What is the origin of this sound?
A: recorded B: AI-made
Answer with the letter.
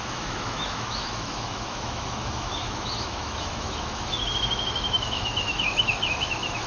B